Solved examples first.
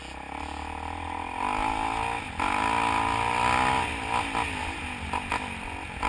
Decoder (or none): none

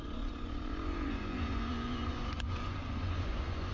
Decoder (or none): vocoder, Vocos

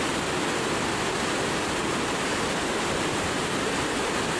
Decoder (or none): none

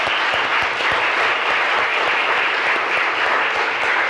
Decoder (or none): none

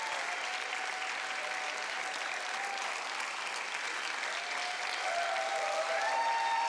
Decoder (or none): none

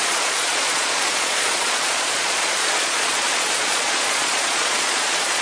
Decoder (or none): vocoder, Vocos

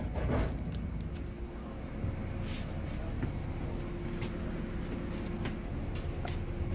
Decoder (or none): none